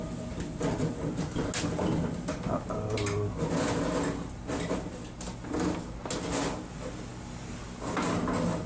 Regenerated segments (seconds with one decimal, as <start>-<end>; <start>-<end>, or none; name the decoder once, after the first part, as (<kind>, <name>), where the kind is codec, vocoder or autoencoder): none